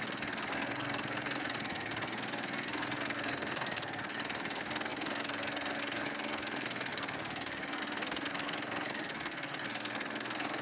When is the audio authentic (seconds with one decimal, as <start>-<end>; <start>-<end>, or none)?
none

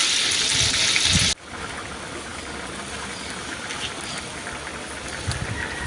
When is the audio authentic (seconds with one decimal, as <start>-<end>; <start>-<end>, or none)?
0.0-5.9